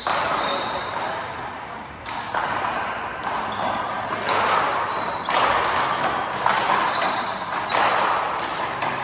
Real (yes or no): yes